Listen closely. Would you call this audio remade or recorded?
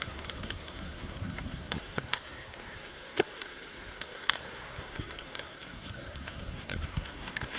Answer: remade